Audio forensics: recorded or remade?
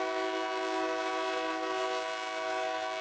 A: recorded